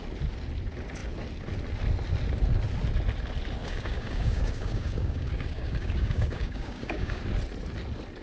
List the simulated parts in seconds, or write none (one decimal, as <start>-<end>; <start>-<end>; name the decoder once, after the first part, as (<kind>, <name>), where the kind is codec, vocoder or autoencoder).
3.6-7.2 (codec, DAC)